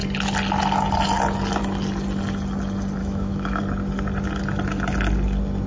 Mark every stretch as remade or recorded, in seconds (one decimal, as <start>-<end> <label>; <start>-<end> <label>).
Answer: 0.0-3.0 recorded; 3.0-3.6 remade; 3.6-5.7 recorded